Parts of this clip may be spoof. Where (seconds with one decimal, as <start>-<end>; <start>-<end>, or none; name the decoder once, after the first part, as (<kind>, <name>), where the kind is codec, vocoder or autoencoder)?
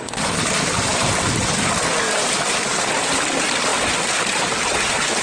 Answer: 0.9-1.7 (vocoder, BigVGAN v2); 2.2-2.9